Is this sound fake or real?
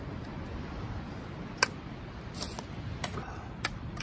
real